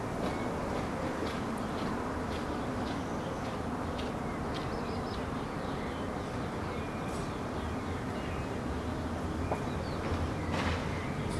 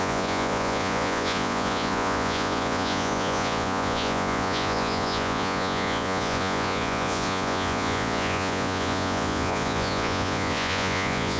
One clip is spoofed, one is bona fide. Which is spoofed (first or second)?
second